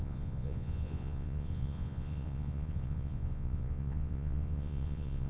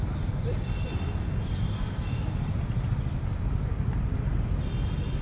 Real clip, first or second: second